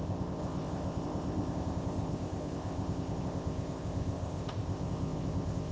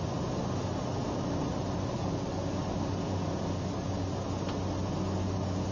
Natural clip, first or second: second